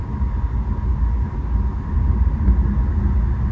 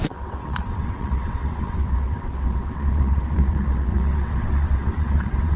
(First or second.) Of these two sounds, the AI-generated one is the second